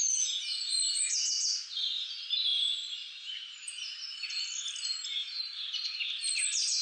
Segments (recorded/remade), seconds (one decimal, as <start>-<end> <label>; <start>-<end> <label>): 0.0-2.5 recorded; 2.5-4.0 remade; 4.0-5.2 recorded; 5.2-6.1 remade; 6.1-6.8 recorded